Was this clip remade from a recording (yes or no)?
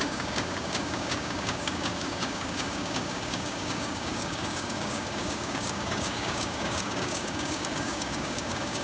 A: yes